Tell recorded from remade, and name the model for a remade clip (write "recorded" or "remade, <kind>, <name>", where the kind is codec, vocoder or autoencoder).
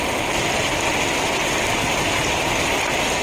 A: recorded